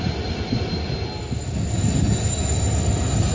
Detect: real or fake real